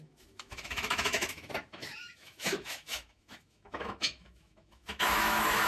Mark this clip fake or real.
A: fake